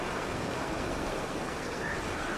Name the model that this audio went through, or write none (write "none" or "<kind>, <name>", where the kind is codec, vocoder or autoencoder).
codec, SNAC